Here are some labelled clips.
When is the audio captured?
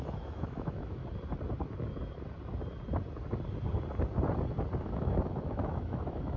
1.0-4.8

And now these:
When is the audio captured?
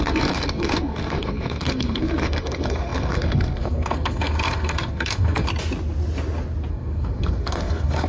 5.5-6.7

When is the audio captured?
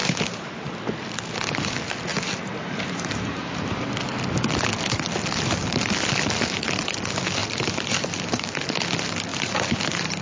0.7-2.1; 3.9-7.4; 8.6-9.3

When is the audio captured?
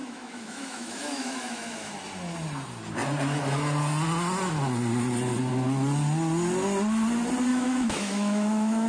1.9-7.5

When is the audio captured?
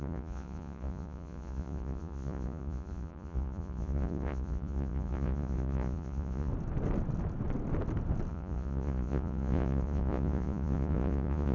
6.5-8.3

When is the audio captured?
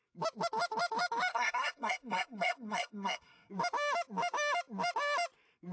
0.0-1.3; 3.5-5.7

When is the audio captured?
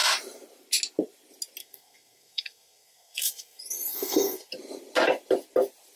0.0-1.6; 4.5-6.0